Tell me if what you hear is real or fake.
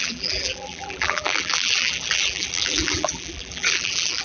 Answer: fake